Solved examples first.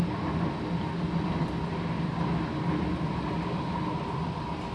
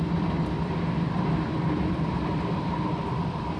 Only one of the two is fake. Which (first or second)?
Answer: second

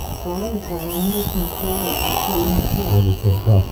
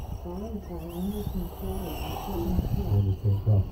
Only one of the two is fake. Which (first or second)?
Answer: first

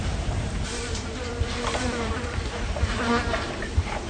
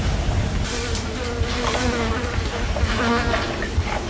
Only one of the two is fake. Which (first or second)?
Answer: first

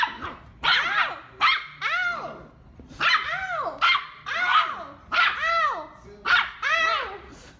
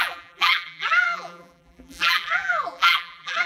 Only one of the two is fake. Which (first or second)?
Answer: second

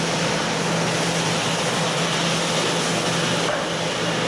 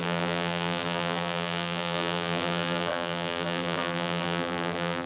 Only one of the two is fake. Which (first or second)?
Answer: second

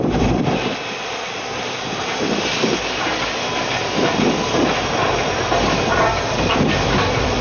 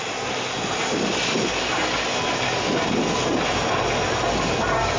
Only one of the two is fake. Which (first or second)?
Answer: first